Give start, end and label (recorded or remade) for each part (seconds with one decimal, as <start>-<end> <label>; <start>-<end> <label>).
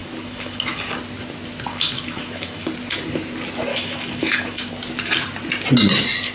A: 0.0-0.8 remade; 0.8-1.7 recorded; 1.7-2.6 remade; 2.6-3.7 recorded; 3.7-4.7 remade; 4.7-6.3 recorded